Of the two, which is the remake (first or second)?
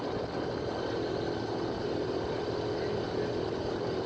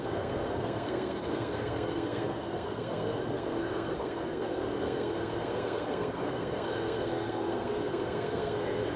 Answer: second